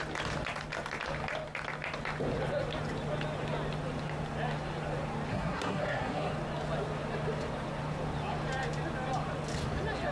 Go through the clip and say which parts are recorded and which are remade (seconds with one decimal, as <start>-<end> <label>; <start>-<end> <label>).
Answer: 0.0-5.3 recorded; 5.3-6.3 remade; 6.3-10.1 recorded